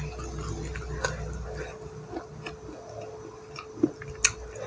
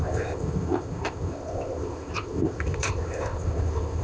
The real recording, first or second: first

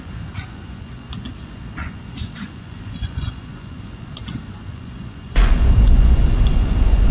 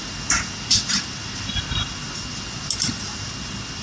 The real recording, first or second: second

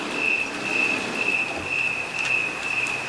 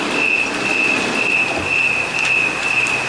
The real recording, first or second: second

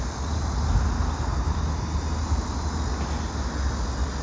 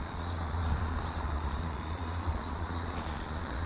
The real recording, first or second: first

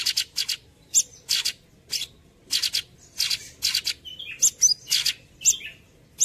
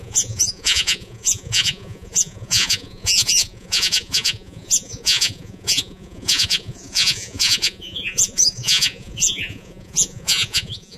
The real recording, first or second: first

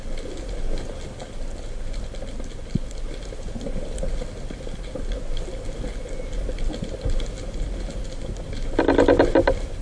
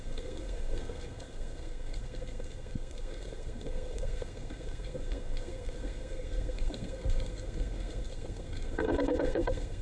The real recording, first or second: first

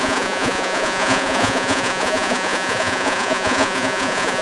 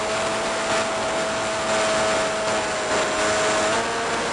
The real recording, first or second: second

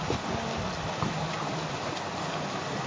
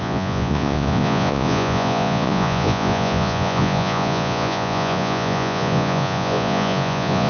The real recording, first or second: first